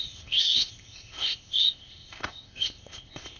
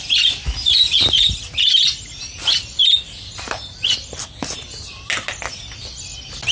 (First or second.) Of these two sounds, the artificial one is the first